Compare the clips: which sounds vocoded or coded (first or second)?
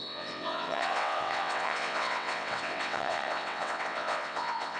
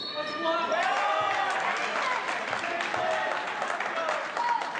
first